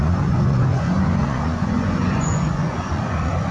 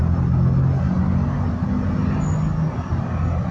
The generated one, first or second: first